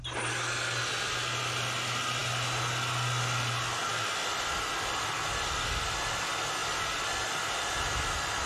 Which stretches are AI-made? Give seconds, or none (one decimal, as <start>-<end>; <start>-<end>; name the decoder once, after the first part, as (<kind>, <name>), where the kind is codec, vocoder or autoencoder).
none